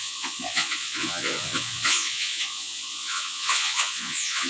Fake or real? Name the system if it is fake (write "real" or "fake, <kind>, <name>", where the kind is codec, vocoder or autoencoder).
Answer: fake, vocoder, Vocos